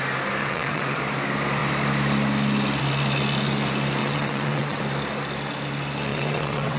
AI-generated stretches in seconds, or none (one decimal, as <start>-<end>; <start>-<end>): 0.4-1.0; 4.0-4.8; 6.1-6.8